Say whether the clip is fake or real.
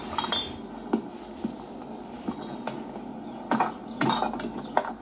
real